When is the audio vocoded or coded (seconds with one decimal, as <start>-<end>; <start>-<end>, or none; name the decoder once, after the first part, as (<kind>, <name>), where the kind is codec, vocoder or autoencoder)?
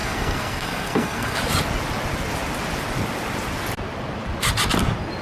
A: 0.0-1.4 (codec, SNAC)